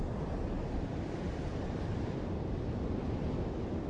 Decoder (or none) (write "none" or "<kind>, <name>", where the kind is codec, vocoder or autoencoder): vocoder, BigVGAN v2